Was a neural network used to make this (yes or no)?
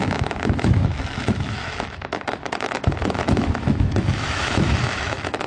yes